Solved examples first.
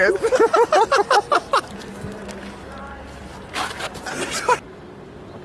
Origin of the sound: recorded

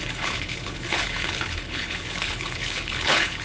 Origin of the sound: remade